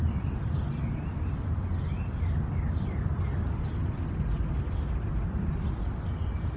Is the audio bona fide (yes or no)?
yes